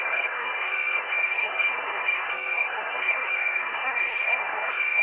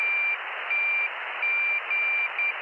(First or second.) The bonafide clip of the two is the second